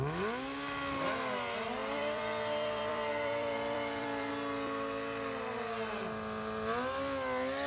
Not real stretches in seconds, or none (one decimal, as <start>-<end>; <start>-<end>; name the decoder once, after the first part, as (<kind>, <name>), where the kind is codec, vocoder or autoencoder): 1.8-4.3 (vocoder, BigVGAN v2)